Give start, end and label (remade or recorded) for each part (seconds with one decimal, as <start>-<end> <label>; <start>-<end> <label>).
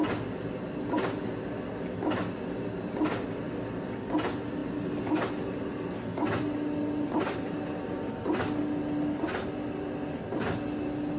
0.0-11.2 recorded